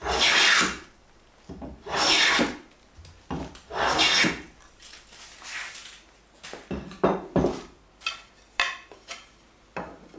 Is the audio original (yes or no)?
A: yes